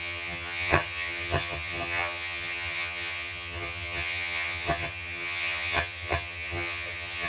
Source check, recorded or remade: remade